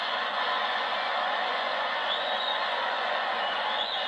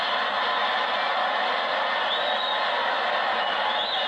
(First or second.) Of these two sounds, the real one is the second